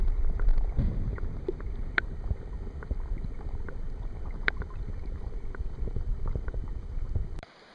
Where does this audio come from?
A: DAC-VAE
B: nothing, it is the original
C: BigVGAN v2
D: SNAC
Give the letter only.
C